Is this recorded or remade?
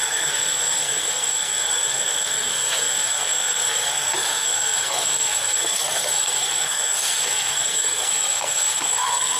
remade